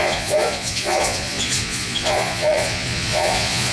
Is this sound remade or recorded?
remade